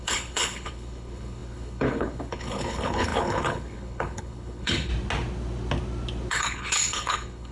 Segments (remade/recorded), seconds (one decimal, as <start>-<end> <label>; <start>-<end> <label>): 0.0-4.9 remade; 4.9-6.3 recorded; 6.3-7.5 remade